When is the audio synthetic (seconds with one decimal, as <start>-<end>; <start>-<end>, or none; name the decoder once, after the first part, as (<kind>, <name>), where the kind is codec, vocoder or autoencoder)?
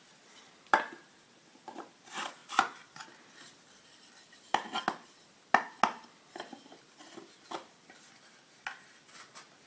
none